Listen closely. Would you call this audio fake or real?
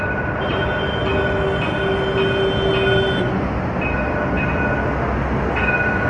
real